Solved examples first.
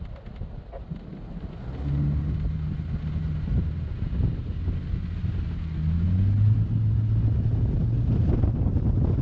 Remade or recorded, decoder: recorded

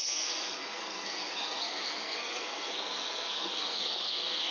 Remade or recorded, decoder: remade, codec, SNAC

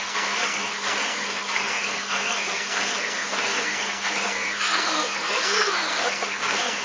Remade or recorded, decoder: remade, codec, SNAC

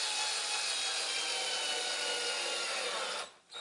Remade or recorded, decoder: recorded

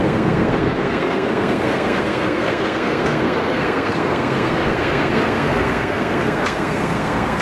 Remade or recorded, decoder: remade, codec, SNAC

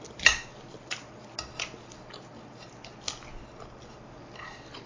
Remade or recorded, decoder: recorded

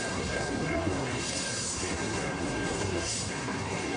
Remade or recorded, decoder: remade, codec, SNAC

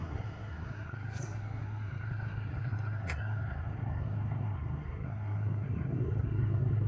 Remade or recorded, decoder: remade, codec, SNAC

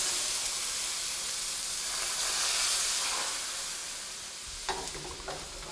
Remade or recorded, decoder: recorded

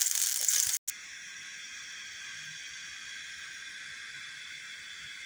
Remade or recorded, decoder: recorded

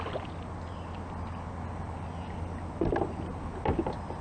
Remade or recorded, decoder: recorded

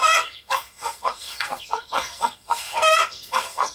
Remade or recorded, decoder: remade, codec, SNAC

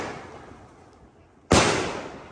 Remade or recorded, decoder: recorded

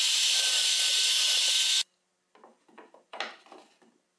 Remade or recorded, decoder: recorded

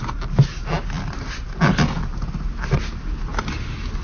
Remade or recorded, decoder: recorded